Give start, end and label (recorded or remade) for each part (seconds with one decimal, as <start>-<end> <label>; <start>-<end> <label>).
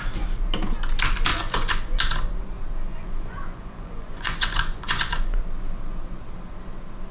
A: 0.0-1.3 recorded; 1.3-2.0 remade; 2.0-2.9 recorded; 2.9-5.4 remade; 5.4-7.1 recorded